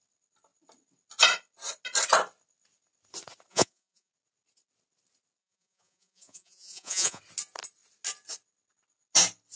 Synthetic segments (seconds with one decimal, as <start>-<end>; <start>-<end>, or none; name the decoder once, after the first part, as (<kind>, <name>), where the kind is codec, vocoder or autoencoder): 3.5-4.1 (vocoder, Vocos); 5.4-7.2